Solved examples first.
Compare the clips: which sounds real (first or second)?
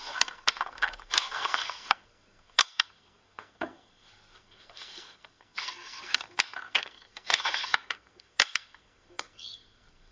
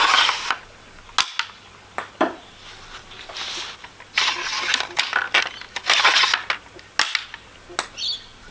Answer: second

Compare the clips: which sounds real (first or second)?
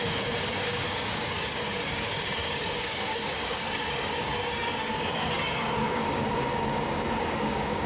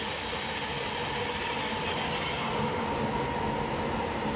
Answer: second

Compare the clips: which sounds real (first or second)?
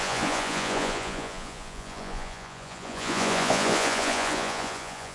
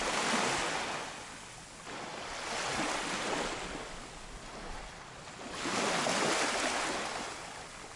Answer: second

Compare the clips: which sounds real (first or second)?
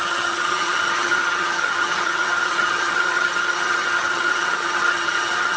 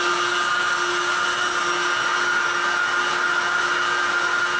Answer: second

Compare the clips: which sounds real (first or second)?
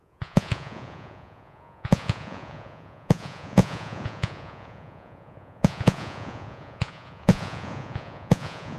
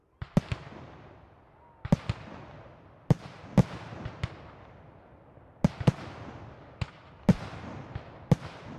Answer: second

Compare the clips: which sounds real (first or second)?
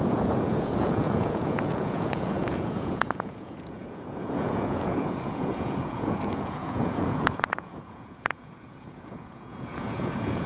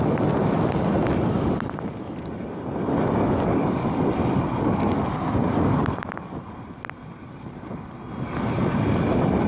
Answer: second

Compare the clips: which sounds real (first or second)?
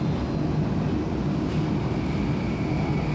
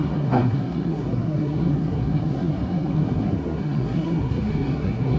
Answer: first